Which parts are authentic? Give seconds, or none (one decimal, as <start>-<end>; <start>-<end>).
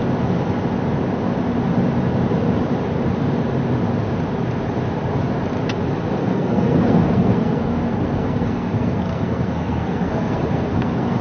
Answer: 0.0-6.2